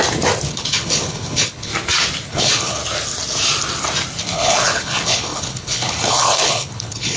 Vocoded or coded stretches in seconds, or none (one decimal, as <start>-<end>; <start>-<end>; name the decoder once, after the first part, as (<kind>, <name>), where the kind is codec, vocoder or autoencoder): 0.5-1.7 (codec, HILCodec); 2.3-2.8; 4.2-7.2